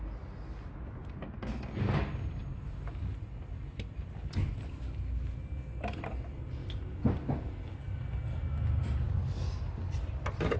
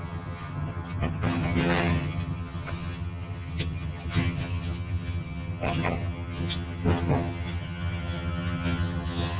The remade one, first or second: second